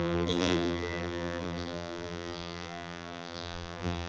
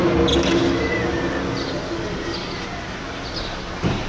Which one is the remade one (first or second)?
first